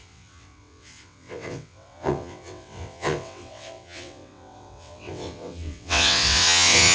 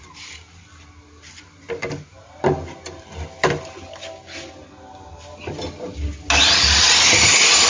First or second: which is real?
second